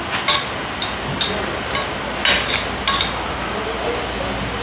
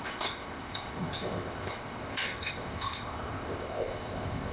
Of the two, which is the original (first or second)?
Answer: first